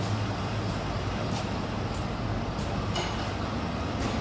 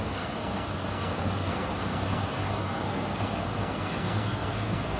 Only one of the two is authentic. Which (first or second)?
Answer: first